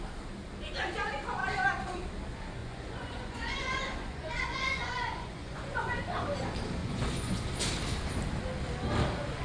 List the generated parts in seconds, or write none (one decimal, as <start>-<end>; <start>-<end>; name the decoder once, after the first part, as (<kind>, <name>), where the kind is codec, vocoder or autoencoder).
2.6-6.0 (vocoder, Vocos); 6.8-7.4

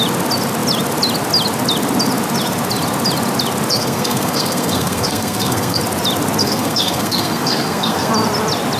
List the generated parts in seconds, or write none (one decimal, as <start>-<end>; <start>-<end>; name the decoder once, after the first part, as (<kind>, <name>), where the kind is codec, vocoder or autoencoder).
3.7-5.8 (codec, SNAC); 6.4-8.1

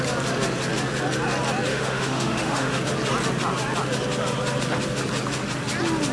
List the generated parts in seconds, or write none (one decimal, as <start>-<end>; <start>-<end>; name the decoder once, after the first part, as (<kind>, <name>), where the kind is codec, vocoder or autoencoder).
1.7-2.8 (autoencoder, DAC-VAE)

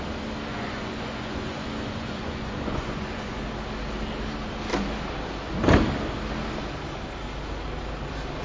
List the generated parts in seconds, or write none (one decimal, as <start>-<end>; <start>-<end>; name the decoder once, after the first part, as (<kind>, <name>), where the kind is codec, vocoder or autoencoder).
0.5-3.4 (vocoder, Vocos)

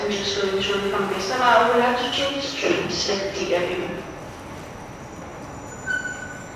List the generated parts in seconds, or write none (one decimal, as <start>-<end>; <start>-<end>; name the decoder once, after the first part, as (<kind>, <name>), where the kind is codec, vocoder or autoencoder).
2.1-3.4 (codec, SNAC)

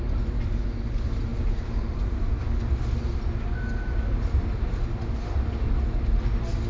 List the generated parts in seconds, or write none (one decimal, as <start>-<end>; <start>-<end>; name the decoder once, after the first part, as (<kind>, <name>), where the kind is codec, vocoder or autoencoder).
1.3-2.3 (vocoder, BigVGAN v2)

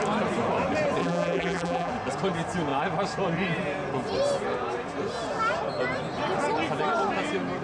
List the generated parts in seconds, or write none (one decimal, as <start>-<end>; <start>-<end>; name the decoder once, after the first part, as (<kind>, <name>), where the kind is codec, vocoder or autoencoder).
1.0-1.9 (vocoder, BigVGAN v2)

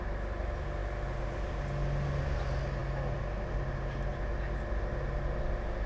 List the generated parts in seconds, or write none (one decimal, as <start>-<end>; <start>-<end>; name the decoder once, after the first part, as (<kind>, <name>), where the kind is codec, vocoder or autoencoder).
none